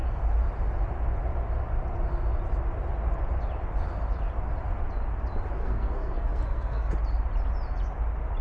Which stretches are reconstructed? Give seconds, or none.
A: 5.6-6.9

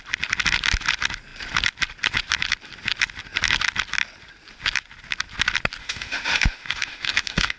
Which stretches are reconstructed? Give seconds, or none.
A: 5.8-7.6

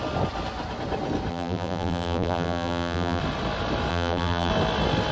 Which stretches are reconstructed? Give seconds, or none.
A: 1.3-3.2; 3.9-4.5

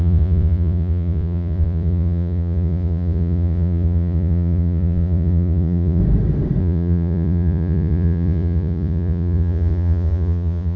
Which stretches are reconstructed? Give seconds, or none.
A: 0.0-6.0; 6.6-10.8

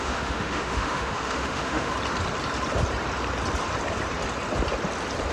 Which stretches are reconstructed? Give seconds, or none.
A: 0.0-1.9

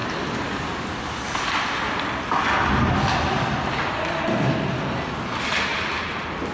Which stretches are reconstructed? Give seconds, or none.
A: none

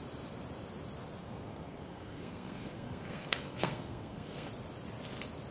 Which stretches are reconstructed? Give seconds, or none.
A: 1.2-4.5